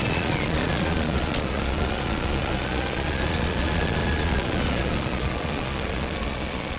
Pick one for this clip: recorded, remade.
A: remade